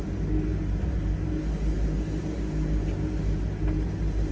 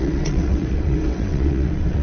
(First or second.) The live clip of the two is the first